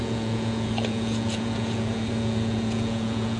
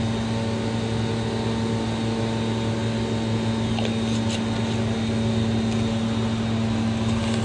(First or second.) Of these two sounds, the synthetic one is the first